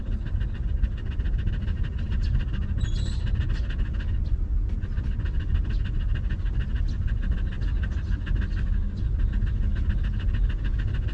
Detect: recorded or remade recorded